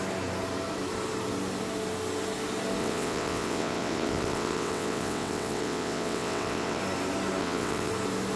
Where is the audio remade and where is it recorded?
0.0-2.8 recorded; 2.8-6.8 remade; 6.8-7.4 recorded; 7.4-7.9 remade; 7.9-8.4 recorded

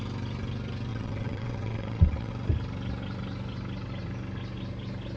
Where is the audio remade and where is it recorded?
0.0-0.9 recorded; 0.9-2.3 remade; 2.3-5.2 recorded

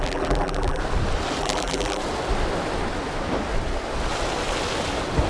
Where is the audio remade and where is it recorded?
0.0-0.8 remade; 0.8-1.4 recorded; 1.4-2.0 remade; 2.0-5.3 recorded

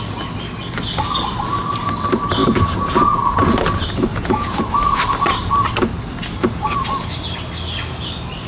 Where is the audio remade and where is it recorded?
0.0-2.4 recorded; 2.4-3.6 remade; 3.6-4.1 recorded; 4.1-4.6 remade; 4.6-8.5 recorded

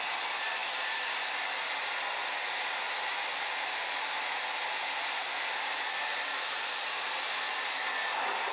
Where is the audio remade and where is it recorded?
0.0-8.5 recorded

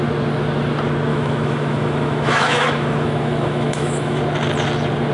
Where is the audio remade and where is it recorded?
0.0-1.1 recorded; 1.1-4.2 remade; 4.2-5.1 recorded

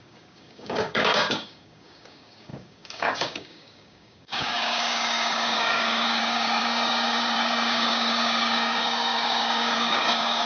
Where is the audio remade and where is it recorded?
0.0-10.5 remade

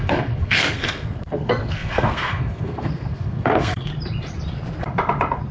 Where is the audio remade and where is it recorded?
0.0-3.9 remade; 3.9-5.5 recorded